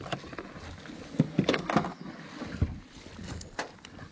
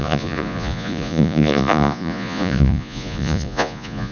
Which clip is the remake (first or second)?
second